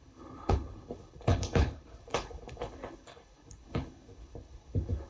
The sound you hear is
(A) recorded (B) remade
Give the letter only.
B